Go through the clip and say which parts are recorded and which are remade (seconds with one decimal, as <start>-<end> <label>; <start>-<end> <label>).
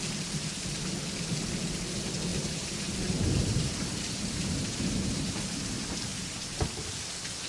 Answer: 0.0-2.3 recorded; 2.3-5.3 remade; 5.3-6.1 recorded; 6.1-6.7 remade; 6.7-7.5 recorded